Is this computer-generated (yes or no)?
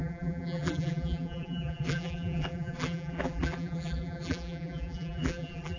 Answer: yes